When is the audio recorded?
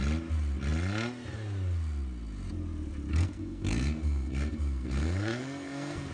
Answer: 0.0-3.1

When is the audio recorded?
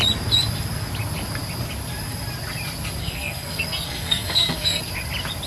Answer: 0.0-3.0; 4.8-5.5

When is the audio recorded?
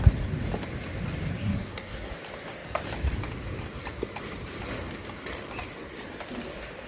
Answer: 0.0-1.4; 2.1-6.9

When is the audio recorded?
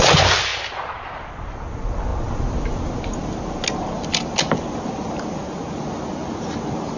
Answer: 0.0-7.0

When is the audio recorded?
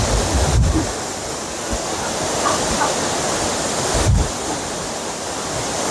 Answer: 0.0-5.9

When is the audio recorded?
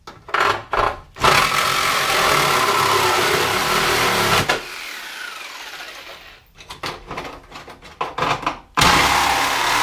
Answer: 0.0-9.8